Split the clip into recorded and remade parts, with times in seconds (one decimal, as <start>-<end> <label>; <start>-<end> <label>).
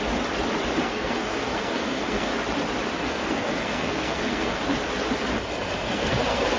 0.0-0.8 recorded; 0.8-2.3 remade; 2.3-3.0 recorded; 3.0-4.6 remade; 4.6-5.8 recorded; 5.8-6.6 remade